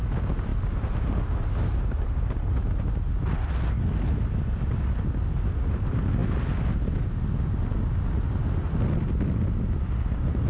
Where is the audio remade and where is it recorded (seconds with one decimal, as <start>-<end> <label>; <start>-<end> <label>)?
0.0-10.5 recorded